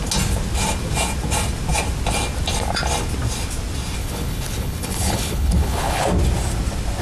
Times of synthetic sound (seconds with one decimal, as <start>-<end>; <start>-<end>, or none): 4.0-6.0